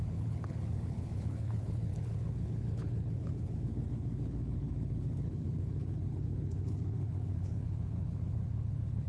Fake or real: fake